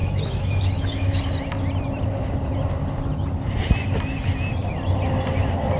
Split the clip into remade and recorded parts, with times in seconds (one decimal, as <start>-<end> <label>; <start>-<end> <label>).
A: 0.0-1.2 remade; 1.2-5.8 recorded